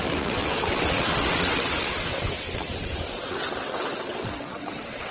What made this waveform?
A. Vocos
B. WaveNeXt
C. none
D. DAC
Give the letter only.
B